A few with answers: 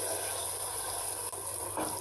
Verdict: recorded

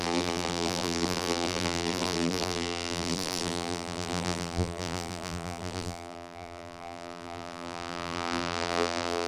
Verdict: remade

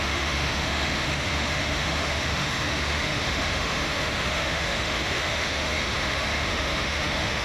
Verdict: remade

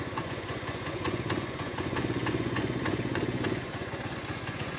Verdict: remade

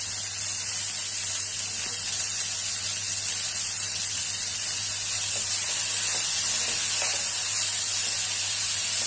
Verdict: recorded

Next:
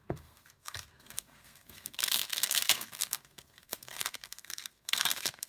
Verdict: remade